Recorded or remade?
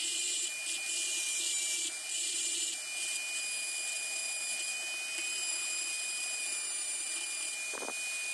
recorded